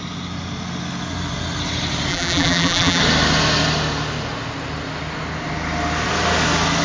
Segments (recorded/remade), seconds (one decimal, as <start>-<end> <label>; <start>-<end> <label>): 0.0-2.1 recorded; 2.1-3.0 remade; 3.0-6.8 recorded